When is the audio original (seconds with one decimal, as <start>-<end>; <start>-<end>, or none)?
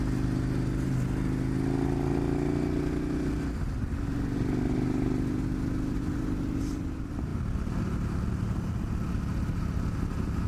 0.0-10.5